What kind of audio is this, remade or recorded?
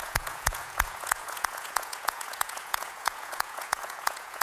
remade